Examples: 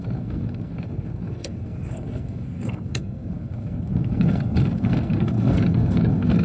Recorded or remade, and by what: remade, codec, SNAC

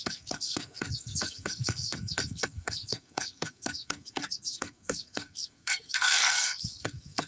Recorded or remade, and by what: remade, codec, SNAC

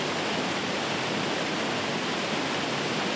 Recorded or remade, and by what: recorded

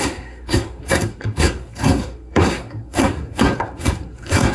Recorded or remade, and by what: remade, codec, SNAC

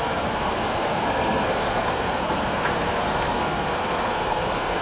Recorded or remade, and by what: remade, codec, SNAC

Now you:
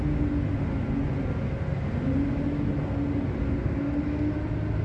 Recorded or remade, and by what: recorded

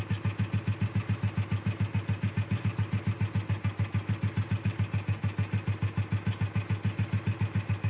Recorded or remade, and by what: recorded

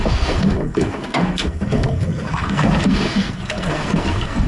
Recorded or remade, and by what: remade, codec, SNAC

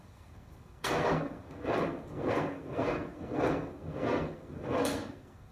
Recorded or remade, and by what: remade, codec, SNAC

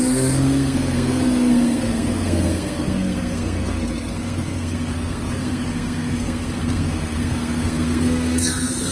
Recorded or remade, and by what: remade, codec, SNAC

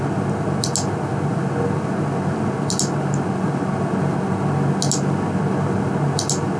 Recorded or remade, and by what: recorded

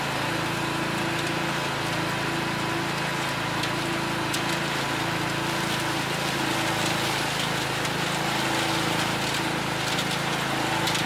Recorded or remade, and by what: recorded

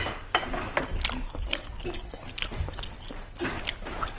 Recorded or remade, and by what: recorded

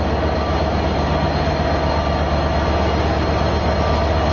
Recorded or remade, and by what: recorded